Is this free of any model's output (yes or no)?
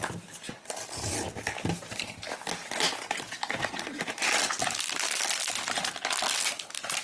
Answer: yes